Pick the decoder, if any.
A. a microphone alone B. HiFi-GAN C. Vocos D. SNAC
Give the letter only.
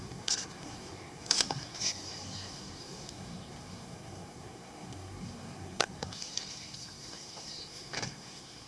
D